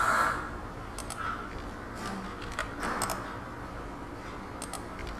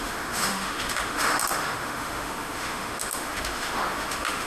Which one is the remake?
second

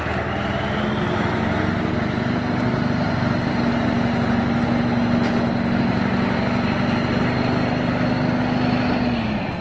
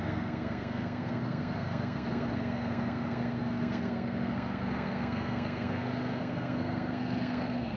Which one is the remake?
second